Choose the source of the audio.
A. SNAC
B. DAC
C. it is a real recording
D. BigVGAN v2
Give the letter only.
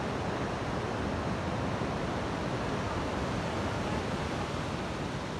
D